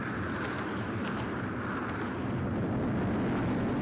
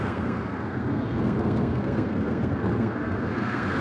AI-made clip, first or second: second